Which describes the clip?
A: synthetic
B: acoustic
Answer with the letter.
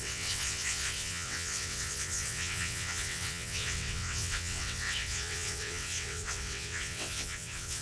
A